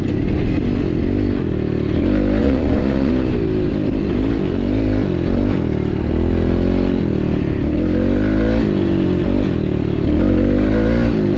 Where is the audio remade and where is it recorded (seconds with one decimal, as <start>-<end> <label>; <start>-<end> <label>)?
0.0-2.4 recorded; 2.4-3.1 remade; 3.1-11.4 recorded